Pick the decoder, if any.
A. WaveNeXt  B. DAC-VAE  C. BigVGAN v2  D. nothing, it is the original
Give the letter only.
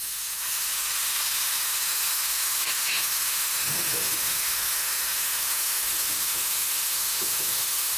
B